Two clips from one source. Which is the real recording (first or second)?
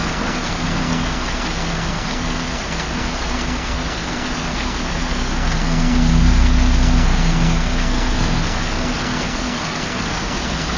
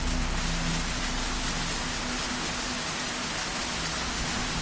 second